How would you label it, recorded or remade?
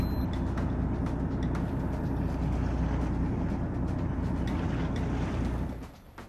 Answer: recorded